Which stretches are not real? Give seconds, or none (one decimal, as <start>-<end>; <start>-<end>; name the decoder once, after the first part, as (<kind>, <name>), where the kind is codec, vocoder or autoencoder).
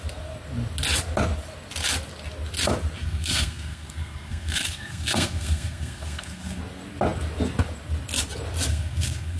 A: 3.0-6.6 (codec, SNAC); 8.7-9.4